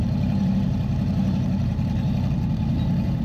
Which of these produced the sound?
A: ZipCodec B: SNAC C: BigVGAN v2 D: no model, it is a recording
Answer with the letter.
C